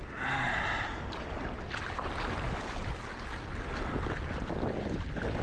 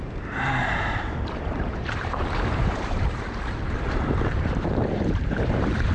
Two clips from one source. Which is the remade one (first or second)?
second